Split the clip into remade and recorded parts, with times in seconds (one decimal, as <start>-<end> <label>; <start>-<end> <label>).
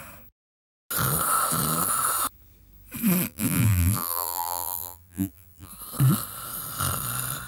0.0-3.3 recorded; 3.3-5.7 remade; 5.7-7.5 recorded